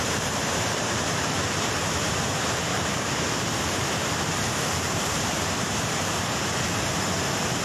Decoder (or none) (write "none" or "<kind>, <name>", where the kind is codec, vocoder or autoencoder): vocoder, BigVGAN v2